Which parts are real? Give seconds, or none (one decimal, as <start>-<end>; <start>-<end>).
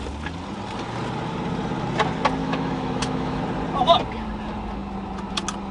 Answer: 0.0-2.4; 3.4-5.7